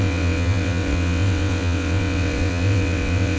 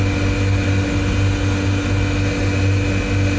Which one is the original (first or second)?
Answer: second